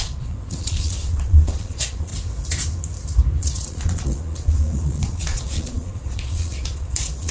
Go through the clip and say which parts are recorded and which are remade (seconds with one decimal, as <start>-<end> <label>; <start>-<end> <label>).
0.0-2.1 remade; 2.1-3.4 recorded; 3.4-7.3 remade